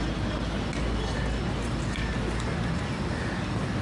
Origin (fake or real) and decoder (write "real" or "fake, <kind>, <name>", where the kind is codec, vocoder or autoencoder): real